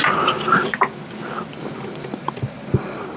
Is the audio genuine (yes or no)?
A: yes